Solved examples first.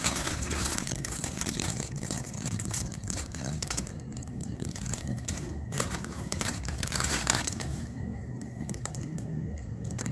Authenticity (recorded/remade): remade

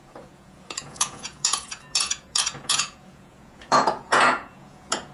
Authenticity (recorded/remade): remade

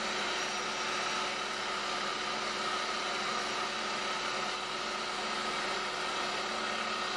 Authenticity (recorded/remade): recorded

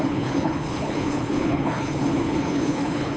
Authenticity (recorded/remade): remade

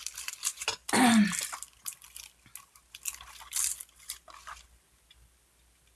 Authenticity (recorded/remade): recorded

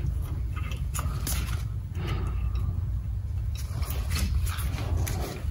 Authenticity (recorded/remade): recorded